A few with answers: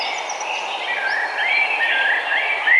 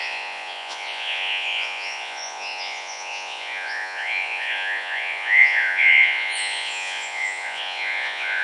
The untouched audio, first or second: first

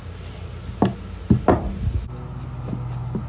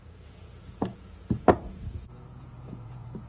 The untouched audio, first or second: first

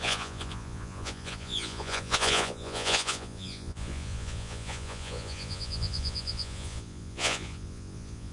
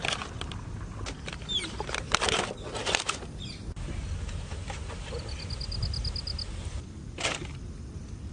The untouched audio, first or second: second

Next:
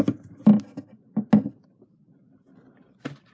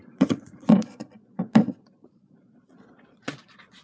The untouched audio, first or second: first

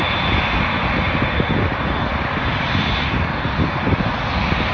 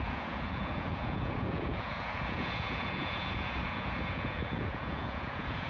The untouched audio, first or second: first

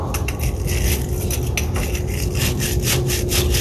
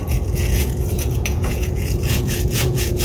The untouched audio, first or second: first